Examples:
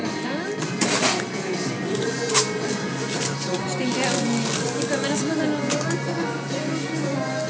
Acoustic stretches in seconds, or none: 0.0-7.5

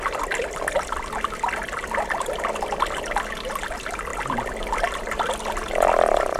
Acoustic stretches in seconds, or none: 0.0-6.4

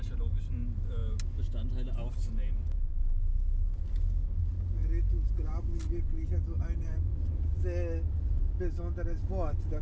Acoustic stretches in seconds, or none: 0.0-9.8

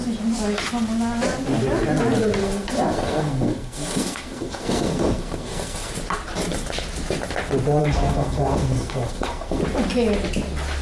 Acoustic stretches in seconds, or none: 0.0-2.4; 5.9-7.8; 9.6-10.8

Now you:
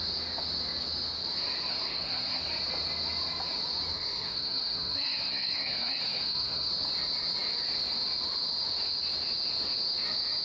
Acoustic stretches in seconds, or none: 0.0-1.7; 2.4-3.9; 6.7-10.4